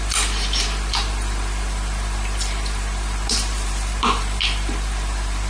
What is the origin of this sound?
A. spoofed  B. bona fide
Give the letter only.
A